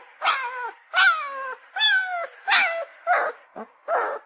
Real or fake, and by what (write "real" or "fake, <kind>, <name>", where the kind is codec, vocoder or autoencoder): real